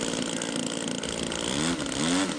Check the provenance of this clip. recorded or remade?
recorded